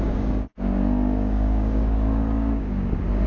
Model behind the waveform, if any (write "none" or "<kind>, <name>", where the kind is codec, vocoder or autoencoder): codec, DAC